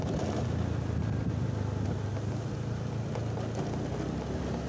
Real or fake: real